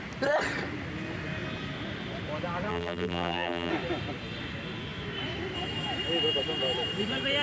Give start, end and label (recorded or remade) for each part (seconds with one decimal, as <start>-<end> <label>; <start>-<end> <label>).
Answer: 0.0-2.7 recorded; 2.7-3.7 remade; 3.7-7.4 recorded